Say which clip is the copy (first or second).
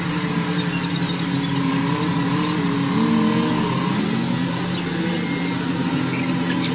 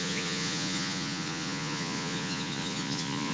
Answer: second